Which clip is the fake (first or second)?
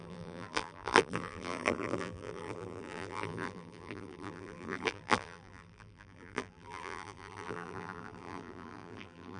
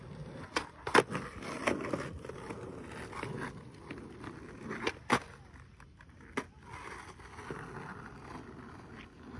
first